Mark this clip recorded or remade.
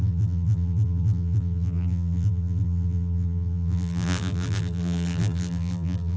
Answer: remade